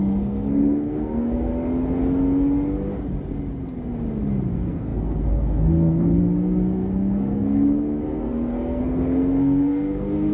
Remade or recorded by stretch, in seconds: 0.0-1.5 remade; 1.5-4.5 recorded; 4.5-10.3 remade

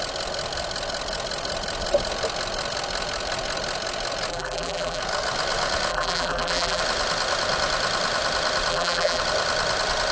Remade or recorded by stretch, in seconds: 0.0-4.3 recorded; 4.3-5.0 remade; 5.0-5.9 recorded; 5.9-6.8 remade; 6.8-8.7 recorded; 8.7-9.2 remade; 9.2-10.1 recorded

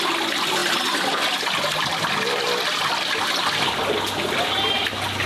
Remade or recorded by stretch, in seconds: 0.0-5.3 recorded